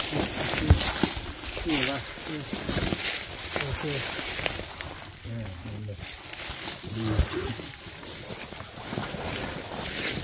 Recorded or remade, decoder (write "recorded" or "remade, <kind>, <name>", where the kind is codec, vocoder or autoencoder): recorded